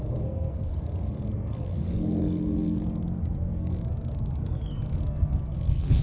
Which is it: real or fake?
fake